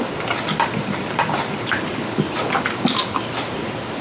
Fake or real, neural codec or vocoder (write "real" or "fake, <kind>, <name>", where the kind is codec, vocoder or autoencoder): real